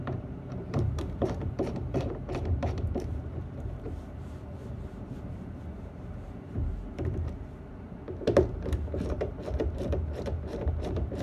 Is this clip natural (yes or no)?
no